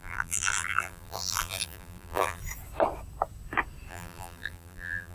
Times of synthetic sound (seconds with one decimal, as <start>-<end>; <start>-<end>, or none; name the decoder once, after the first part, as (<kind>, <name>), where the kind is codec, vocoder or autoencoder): 0.0-2.4 (vocoder, BigVGAN v2); 3.9-5.1